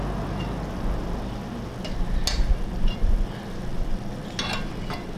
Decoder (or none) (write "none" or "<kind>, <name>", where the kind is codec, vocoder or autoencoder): none